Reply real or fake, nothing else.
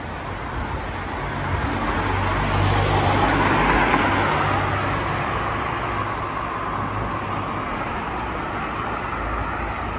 real